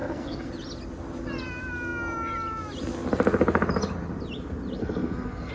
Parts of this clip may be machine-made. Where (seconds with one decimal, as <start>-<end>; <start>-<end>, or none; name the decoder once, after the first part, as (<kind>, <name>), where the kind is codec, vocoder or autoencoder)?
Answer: 0.0-0.5 (codec, SNAC); 4.8-5.5

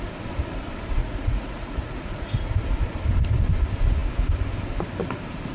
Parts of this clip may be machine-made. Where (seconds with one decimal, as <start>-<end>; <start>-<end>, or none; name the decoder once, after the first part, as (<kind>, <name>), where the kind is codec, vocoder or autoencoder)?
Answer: 1.0-2.5 (vocoder, Vocos)

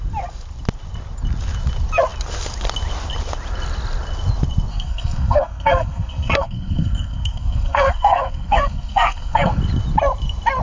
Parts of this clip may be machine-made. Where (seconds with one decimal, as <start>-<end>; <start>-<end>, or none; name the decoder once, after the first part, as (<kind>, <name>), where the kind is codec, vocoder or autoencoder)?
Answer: 4.7-9.6 (codec, SNAC)

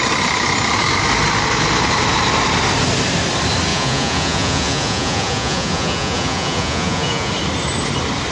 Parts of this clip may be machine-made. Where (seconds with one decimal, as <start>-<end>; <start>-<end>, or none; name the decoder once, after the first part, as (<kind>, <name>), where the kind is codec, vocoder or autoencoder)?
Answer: 3.7-7.3 (vocoder, Vocos)

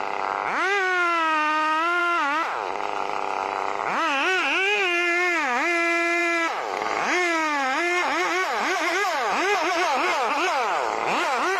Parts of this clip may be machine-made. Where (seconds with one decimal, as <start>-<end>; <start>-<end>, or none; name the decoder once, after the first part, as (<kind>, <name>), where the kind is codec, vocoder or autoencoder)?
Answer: none